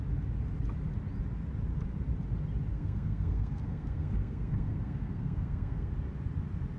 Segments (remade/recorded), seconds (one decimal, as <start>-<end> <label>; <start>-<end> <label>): 0.0-2.7 recorded; 2.7-5.9 remade; 5.9-6.8 recorded